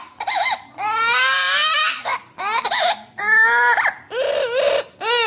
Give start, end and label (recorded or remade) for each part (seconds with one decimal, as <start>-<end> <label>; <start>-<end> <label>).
0.0-5.3 recorded